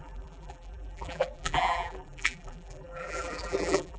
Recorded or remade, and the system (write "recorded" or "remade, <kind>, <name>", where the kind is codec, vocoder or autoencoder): remade, vocoder, BigVGAN v2